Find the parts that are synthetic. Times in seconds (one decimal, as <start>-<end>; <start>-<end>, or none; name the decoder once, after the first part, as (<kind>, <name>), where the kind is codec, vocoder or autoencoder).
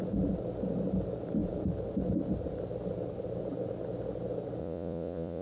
4.6-5.4 (vocoder, Vocos)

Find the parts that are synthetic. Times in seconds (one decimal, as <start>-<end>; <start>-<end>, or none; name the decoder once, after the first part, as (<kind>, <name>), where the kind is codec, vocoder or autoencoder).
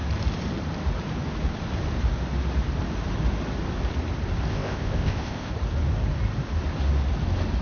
4.5-5.5 (codec, ZipCodec)